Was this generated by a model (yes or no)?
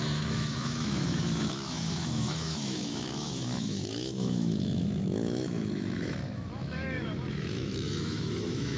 yes